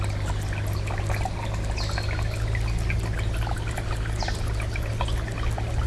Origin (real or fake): real